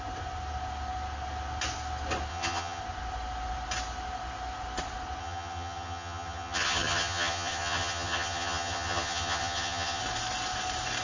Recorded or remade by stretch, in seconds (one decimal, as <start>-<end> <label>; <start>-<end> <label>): 0.0-2.3 recorded; 2.3-2.8 remade; 2.8-5.2 recorded; 5.2-10.0 remade; 10.0-11.0 recorded